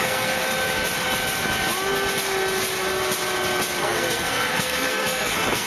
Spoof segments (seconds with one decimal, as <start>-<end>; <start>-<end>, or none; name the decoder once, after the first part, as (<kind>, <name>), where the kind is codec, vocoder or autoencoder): 0.0-0.4 (codec, SNAC); 3.8-5.7